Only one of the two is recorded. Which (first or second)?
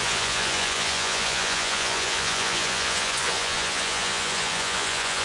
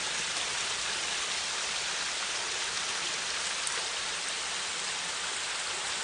second